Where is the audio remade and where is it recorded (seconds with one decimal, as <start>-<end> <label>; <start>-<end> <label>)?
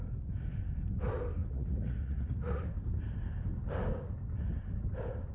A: 0.0-1.4 recorded; 1.4-2.6 remade; 2.6-5.3 recorded